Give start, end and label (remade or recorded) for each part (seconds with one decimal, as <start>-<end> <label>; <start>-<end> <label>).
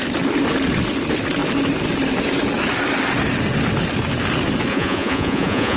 0.0-4.7 recorded; 4.7-5.8 remade